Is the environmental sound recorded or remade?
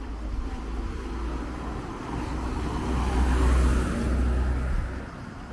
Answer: recorded